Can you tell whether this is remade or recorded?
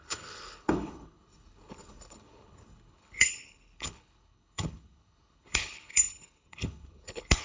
remade